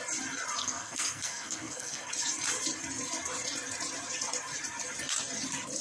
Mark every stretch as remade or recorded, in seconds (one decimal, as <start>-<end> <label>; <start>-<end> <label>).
0.0-0.6 recorded; 0.6-2.1 remade; 2.1-5.8 recorded